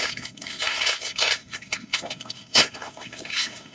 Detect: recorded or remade remade